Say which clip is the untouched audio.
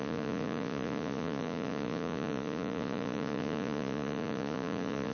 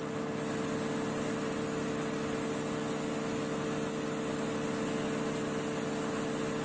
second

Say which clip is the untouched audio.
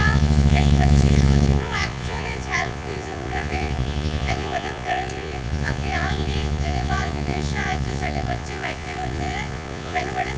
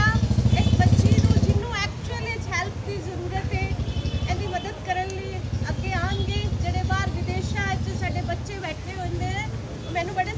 second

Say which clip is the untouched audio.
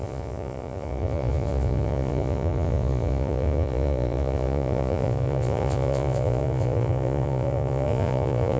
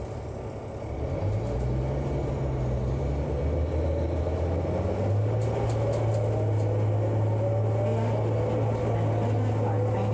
second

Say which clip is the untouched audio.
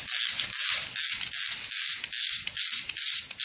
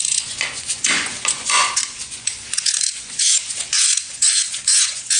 first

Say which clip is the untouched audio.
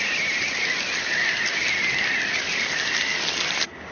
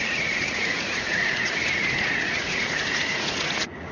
first